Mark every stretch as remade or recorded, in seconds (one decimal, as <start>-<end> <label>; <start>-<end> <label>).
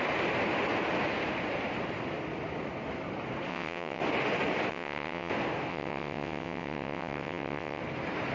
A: 0.0-3.5 recorded; 3.5-4.0 remade; 4.0-4.7 recorded; 4.7-5.3 remade; 5.3-5.7 recorded; 5.7-7.8 remade; 7.8-8.3 recorded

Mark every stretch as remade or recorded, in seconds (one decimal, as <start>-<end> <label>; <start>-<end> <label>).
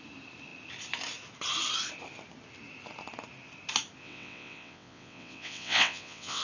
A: 0.0-4.0 recorded; 4.0-6.4 remade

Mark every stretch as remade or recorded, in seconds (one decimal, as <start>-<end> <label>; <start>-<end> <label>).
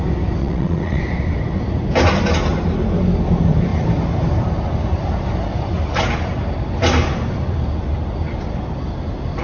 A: 0.0-0.4 recorded; 0.4-1.0 remade; 1.0-9.4 recorded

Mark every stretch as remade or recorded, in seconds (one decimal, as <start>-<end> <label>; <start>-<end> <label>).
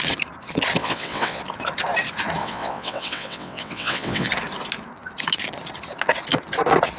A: 0.0-0.8 recorded; 0.8-1.4 remade; 1.4-2.4 recorded; 2.4-4.3 remade; 4.3-7.0 recorded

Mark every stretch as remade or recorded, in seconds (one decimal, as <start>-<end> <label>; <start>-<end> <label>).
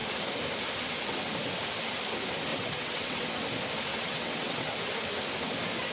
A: 0.0-2.5 recorded; 2.5-3.3 remade; 3.3-3.9 recorded; 3.9-4.7 remade; 4.7-5.9 recorded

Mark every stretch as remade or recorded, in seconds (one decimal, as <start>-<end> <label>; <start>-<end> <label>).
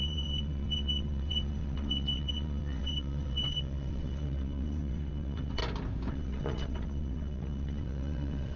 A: 0.0-5.6 remade; 5.6-6.1 recorded; 6.1-8.6 remade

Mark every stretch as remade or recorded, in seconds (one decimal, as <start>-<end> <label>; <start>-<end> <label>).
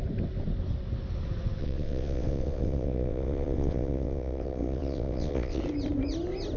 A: 0.0-1.6 recorded; 1.6-5.6 remade; 5.6-6.6 recorded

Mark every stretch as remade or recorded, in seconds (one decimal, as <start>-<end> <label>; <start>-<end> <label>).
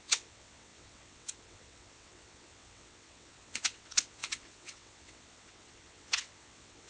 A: 0.0-6.9 remade